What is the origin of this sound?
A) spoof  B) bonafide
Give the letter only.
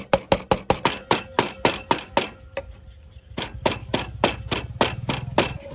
B